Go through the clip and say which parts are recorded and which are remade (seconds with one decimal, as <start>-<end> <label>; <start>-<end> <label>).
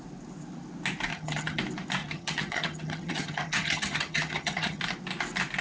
0.0-1.1 recorded; 1.1-1.6 remade; 1.6-2.0 recorded; 2.0-4.8 remade; 4.8-5.6 recorded